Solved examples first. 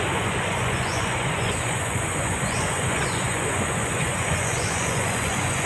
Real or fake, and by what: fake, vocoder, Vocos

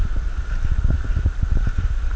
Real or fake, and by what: real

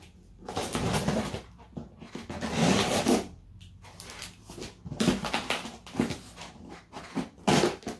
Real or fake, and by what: real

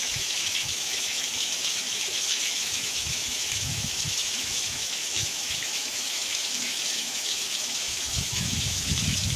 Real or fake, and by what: fake, autoencoder, DAC-VAE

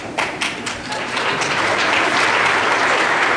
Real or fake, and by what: fake, vocoder, BigVGAN v2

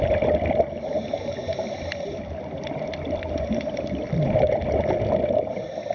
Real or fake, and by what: real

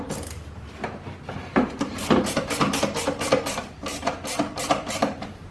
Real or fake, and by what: fake, vocoder, BigVGAN v2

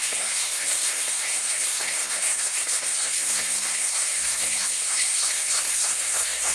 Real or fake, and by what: fake, codec, SNAC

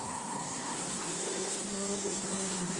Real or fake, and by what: fake, codec, SNAC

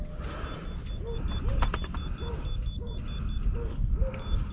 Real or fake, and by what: real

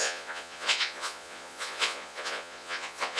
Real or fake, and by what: fake, vocoder, Vocos